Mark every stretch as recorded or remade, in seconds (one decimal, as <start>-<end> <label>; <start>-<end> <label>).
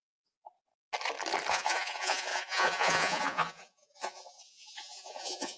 0.0-0.7 remade; 0.7-1.5 recorded; 1.5-5.6 remade